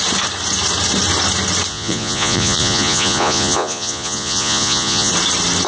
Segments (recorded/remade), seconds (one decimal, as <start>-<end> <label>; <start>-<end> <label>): 0.0-1.7 recorded; 1.7-5.1 remade; 5.1-5.7 recorded